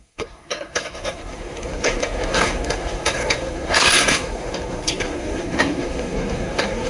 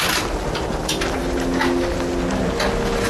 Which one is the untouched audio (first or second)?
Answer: second